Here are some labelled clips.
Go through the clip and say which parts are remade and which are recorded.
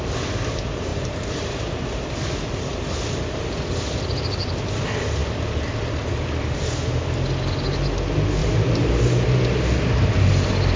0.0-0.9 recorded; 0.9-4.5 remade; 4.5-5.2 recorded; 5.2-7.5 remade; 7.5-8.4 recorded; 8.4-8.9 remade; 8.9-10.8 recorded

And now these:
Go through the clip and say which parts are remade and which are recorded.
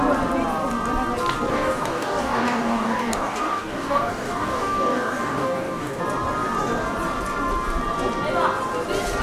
0.0-1.5 recorded; 1.5-6.0 remade; 6.0-9.2 recorded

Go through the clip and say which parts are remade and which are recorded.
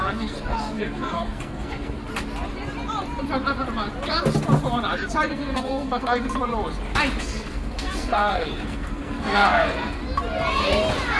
0.0-2.0 remade; 2.0-5.3 recorded; 5.3-6.5 remade; 6.5-7.2 recorded; 7.2-10.0 remade; 10.0-11.2 recorded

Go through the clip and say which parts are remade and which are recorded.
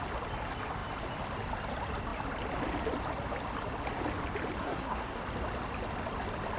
0.0-4.6 recorded; 4.6-5.2 remade; 5.2-6.6 recorded